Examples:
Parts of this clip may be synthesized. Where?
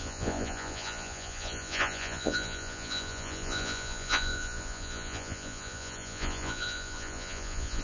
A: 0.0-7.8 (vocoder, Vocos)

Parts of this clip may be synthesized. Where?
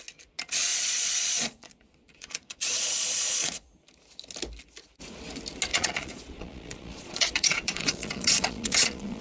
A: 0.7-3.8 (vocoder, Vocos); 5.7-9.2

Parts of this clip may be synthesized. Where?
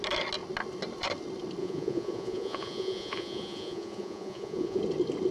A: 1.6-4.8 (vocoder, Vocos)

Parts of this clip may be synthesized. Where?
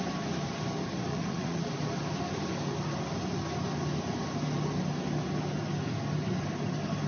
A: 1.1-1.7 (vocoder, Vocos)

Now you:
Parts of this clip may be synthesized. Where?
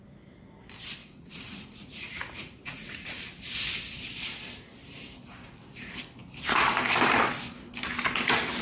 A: 1.0-3.2 (vocoder, Vocos)